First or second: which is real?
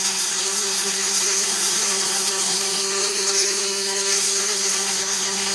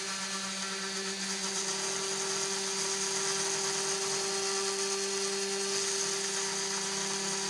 second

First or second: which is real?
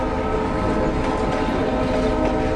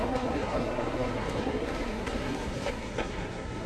first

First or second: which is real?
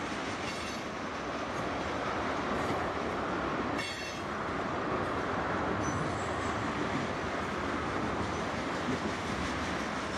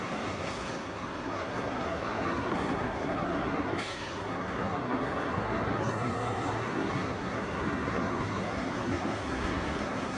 first